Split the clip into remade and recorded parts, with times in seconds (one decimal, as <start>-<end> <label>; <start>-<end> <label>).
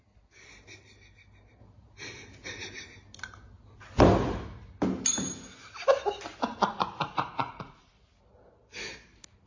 0.0-6.5 recorded; 6.5-7.9 remade; 7.9-9.5 recorded